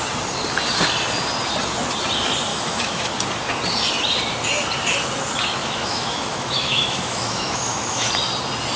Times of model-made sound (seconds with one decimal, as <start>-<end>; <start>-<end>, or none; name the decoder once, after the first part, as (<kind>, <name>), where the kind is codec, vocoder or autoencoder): 2.5-3.1 (autoencoder, DAC-VAE); 5.6-8.1